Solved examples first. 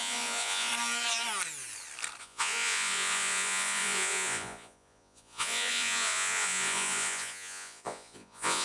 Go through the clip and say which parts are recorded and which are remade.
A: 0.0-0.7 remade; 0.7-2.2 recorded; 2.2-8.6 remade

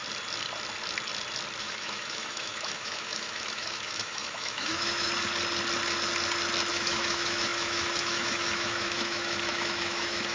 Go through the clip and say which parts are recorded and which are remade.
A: 0.0-1.6 recorded; 1.6-5.1 remade; 5.1-6.7 recorded; 6.7-10.3 remade

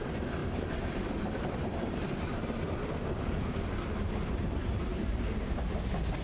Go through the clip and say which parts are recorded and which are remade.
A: 0.0-0.4 recorded; 0.4-4.1 remade; 4.1-4.9 recorded; 4.9-6.2 remade